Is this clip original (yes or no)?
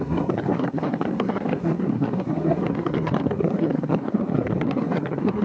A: no